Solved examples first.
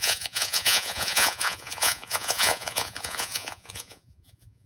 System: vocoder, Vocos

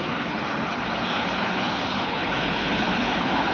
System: codec, HILCodec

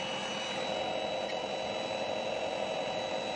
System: none